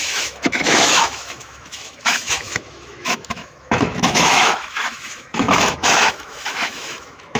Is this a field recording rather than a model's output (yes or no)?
no